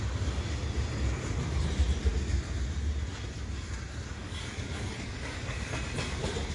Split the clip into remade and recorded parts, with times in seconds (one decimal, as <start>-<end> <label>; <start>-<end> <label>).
0.0-4.2 recorded; 4.2-5.7 remade; 5.7-6.5 recorded